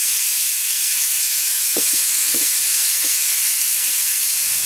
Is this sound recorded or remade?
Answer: remade